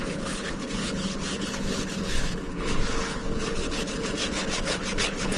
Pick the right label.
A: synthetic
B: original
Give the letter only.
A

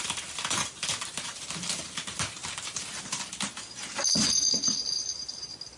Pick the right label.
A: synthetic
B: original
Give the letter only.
A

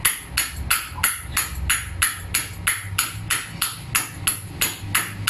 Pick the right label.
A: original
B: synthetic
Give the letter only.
A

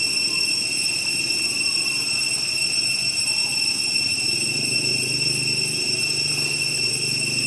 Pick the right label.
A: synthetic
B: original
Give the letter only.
B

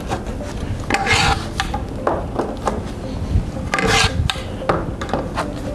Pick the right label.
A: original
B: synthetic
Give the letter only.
A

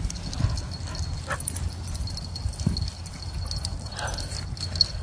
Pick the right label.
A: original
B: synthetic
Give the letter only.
A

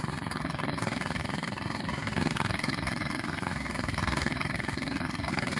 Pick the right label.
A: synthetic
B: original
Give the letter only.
A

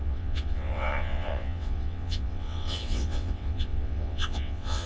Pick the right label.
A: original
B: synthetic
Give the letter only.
B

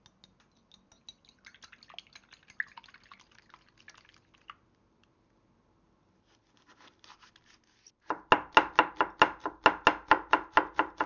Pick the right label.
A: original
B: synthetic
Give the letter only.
A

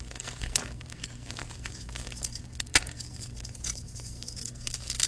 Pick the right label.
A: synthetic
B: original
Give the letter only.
A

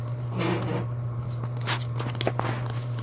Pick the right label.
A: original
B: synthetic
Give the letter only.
A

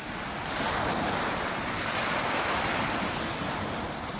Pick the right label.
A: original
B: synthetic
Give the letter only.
A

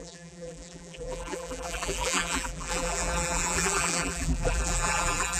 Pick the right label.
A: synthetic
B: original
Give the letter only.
A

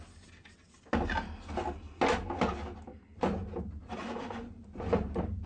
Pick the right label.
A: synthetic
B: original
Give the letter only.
B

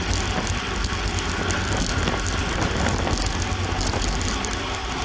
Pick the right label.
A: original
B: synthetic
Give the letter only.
A